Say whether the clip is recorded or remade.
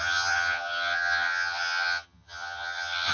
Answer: remade